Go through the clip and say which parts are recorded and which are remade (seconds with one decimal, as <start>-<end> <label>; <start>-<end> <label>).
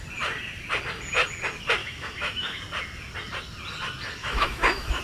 0.0-1.8 recorded; 1.8-2.6 remade; 2.6-4.2 recorded; 4.2-5.0 remade